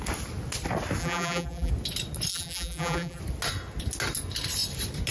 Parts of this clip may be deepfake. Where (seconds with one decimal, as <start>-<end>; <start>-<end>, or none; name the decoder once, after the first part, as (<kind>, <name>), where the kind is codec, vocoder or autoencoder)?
1.0-1.7 (vocoder, BigVGAN v2); 2.3-3.2